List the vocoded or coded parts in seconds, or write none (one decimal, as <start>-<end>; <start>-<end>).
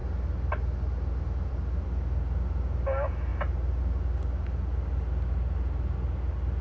none